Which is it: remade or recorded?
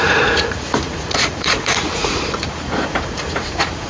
remade